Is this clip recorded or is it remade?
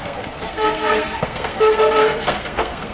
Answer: remade